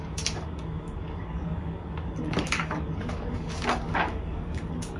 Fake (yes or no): yes